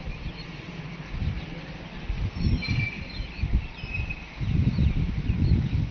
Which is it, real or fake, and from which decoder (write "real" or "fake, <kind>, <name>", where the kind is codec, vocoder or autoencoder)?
real